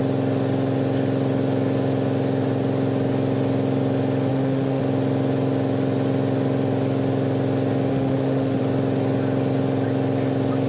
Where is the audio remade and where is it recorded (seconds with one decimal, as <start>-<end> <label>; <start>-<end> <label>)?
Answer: 0.0-4.3 recorded; 4.3-4.8 remade; 4.8-7.9 recorded; 7.9-8.6 remade; 8.6-10.7 recorded